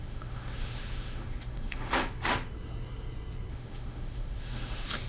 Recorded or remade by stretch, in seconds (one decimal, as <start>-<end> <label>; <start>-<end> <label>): 0.0-2.0 remade; 2.0-3.5 recorded; 3.5-5.1 remade